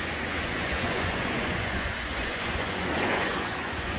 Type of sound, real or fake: fake